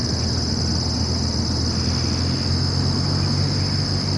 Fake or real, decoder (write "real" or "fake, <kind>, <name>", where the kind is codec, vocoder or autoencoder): real